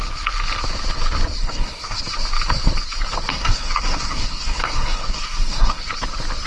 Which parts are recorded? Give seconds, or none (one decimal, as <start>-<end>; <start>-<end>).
0.0-1.4; 2.0-3.3; 5.9-6.5